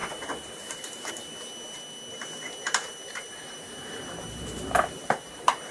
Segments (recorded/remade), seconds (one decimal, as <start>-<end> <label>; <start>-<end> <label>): 0.0-1.1 remade; 1.1-2.1 recorded; 2.1-5.7 remade